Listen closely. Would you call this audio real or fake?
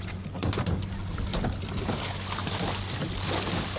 real